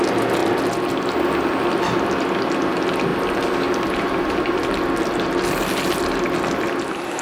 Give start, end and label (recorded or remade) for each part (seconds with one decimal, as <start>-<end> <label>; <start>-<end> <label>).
0.0-7.2 recorded